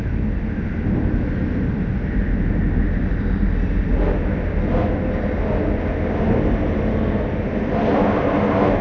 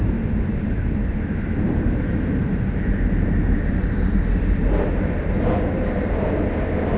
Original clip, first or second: first